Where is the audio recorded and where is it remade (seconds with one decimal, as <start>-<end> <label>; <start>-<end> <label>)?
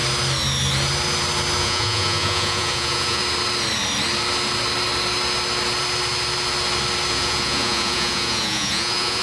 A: 0.0-1.6 recorded; 1.6-3.2 remade; 3.2-7.1 recorded; 7.1-9.2 remade